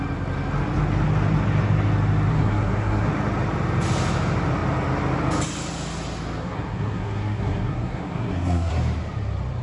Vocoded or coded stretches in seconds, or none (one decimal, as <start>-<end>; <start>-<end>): 2.3-3.1; 6.4-8.7